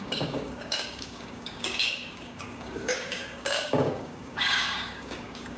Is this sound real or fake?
fake